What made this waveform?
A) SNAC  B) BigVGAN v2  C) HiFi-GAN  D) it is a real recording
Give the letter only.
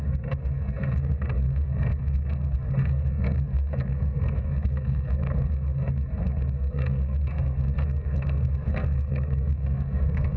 A